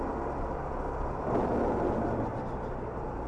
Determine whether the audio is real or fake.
real